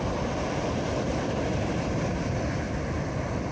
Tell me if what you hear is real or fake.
fake